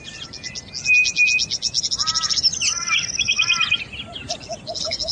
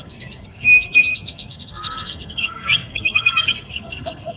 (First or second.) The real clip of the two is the first